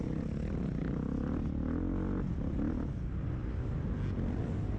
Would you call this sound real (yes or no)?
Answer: yes